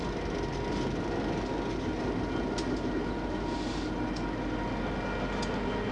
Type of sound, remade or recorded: recorded